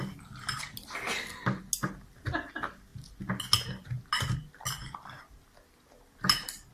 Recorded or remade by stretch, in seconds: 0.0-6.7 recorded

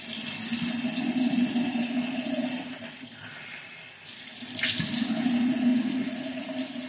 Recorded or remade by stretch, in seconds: 0.0-5.7 recorded; 5.7-6.4 remade; 6.4-6.9 recorded

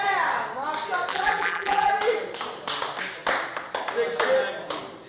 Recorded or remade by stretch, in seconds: 0.0-1.1 recorded; 1.1-1.9 remade; 1.9-5.1 recorded

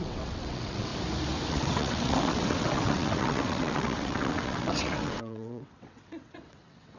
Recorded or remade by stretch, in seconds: 0.0-0.9 remade; 0.9-1.5 recorded; 1.5-7.0 remade